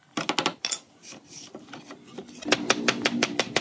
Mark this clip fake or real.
real